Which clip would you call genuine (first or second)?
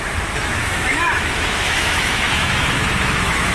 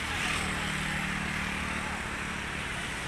second